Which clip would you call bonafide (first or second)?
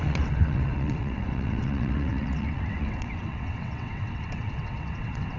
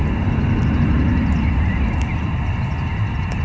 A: second